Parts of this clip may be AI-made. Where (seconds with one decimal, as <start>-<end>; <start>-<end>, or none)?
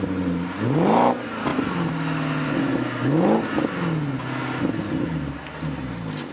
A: none